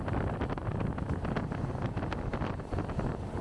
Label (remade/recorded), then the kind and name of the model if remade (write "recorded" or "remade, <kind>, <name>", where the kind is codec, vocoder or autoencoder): recorded